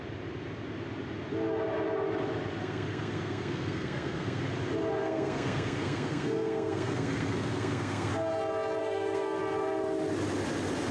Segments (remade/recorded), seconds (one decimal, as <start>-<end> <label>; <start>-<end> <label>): 0.0-2.6 recorded; 2.6-4.4 remade; 4.4-5.0 recorded; 5.0-8.1 remade; 8.1-8.8 recorded; 8.8-9.4 remade; 9.4-10.9 recorded